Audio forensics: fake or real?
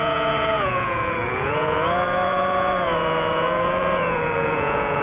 fake